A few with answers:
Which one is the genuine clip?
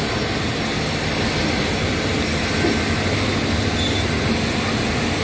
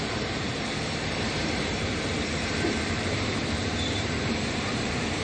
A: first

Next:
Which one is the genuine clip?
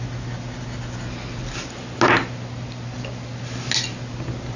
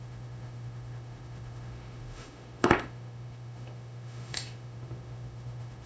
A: first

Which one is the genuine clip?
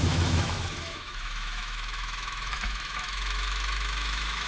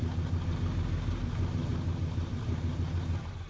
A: second